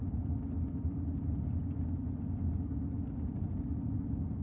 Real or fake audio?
real